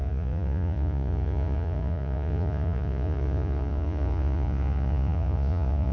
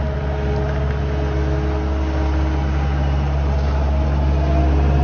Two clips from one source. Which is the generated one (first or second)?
first